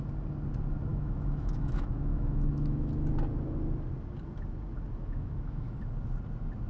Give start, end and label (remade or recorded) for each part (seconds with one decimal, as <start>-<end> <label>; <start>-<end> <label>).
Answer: 0.0-0.9 recorded; 0.9-2.9 remade; 2.9-5.0 recorded; 5.0-5.8 remade; 5.8-6.7 recorded